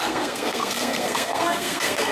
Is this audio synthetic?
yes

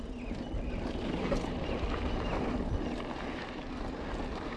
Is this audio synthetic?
no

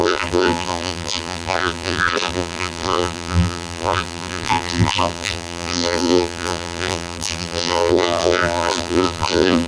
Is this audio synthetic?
yes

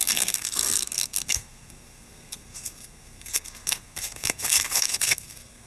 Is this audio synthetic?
yes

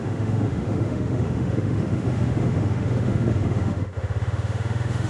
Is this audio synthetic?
yes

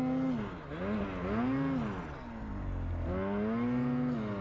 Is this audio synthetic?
no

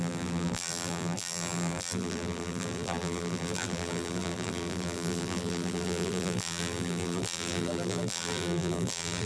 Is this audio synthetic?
yes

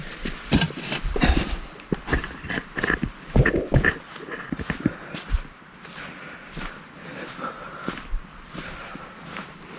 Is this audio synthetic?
yes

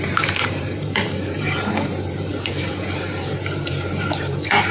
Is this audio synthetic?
yes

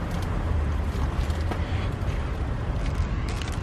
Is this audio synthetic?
no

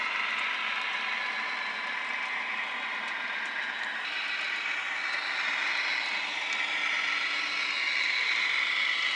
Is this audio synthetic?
no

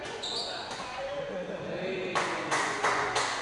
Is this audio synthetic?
yes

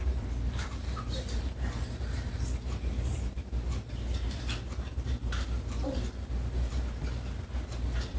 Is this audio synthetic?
yes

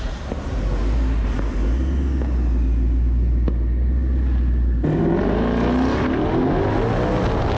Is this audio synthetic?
no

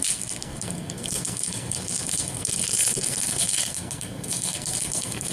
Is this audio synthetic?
yes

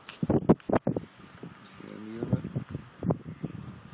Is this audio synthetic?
no